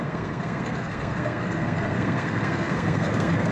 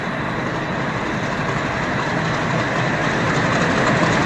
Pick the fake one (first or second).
first